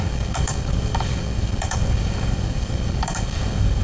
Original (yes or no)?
no